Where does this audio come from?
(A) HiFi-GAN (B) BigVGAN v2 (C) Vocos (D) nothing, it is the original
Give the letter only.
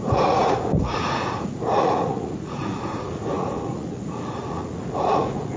C